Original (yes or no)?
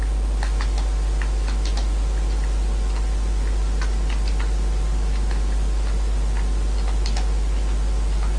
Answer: yes